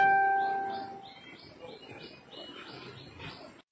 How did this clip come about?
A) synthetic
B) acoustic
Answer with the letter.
B